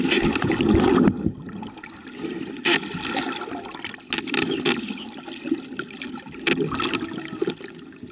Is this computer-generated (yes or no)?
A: no